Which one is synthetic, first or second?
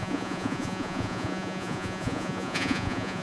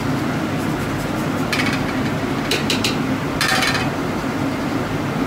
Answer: first